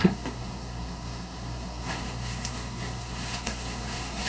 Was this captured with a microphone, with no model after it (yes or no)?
no